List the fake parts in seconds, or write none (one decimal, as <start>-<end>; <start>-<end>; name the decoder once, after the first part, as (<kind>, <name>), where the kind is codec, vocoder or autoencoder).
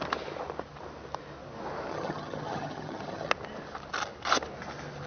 1.9-3.3 (vocoder, HiFi-GAN)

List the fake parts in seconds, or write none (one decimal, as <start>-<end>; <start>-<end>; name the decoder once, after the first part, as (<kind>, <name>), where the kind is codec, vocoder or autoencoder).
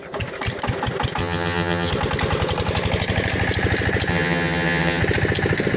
1.2-1.9 (vocoder, HiFi-GAN); 4.1-5.0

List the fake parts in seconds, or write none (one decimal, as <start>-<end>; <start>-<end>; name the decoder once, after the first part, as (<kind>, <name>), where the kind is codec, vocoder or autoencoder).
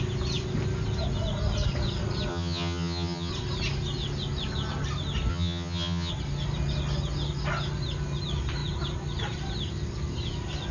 2.3-3.3 (vocoder, HiFi-GAN); 5.3-6.1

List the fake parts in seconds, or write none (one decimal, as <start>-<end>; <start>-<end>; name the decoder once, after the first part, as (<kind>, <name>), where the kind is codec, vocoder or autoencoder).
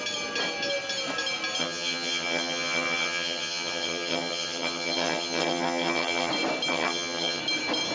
1.6-6.3 (vocoder, HiFi-GAN); 6.7-7.4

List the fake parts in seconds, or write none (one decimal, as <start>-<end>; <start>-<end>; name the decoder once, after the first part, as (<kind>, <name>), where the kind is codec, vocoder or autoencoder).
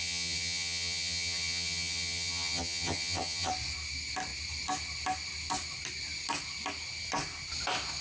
0.0-3.5 (vocoder, HiFi-GAN)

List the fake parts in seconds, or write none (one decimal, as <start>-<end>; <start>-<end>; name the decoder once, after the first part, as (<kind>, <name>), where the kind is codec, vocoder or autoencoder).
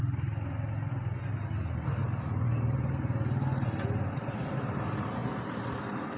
none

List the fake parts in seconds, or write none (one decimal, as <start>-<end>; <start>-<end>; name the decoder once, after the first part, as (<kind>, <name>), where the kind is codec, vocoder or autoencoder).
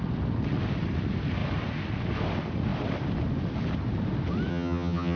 4.5-5.2 (vocoder, HiFi-GAN)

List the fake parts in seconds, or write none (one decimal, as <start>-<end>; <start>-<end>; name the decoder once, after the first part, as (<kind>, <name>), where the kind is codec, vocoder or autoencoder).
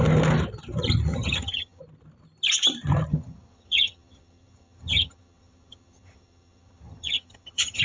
1.1-1.8 (vocoder, HiFi-GAN); 3.1-7.8